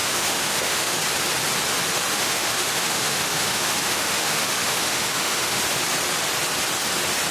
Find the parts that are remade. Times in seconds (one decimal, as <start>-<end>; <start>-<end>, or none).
0.0-1.0; 2.1-5.6

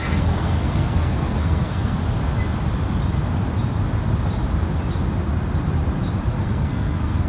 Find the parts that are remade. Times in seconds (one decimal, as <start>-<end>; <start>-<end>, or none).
0.0-2.0; 6.3-7.3